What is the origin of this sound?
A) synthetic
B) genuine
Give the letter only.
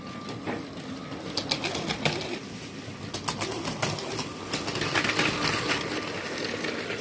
B